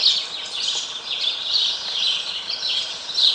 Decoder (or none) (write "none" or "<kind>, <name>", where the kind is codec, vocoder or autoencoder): none